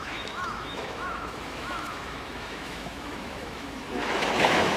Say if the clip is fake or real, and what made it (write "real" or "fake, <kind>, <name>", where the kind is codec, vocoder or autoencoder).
fake, autoencoder, DAC-VAE